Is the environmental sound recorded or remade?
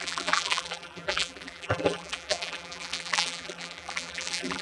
remade